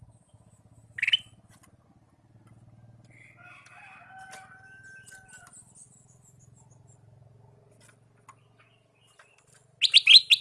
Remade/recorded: recorded